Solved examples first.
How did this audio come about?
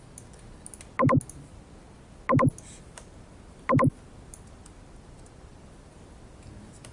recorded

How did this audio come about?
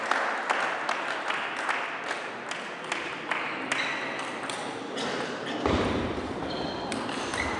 recorded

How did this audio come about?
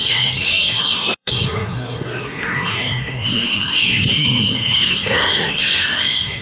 remade